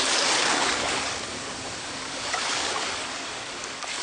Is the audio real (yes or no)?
no